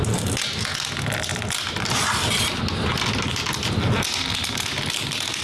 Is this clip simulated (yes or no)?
no